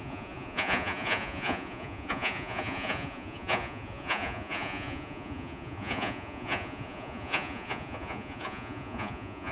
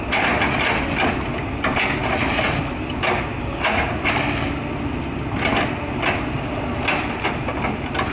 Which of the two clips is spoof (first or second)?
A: first